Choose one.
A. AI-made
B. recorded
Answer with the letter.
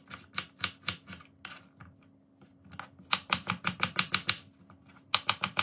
B